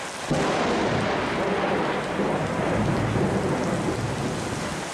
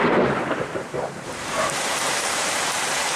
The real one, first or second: first